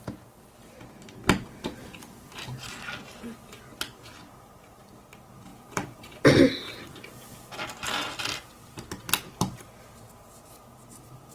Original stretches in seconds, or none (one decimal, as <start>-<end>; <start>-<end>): 0.0-5.5; 6.7-11.3